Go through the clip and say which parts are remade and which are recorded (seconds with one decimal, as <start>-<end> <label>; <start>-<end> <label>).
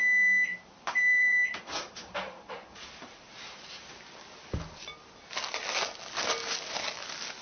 0.0-0.5 recorded; 0.5-4.0 remade; 4.0-7.4 recorded